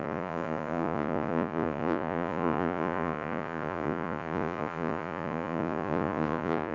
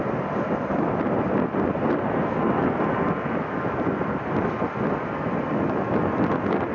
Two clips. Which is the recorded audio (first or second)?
second